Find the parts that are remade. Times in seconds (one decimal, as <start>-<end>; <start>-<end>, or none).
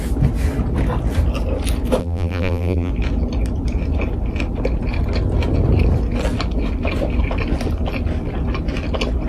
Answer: 2.0-2.9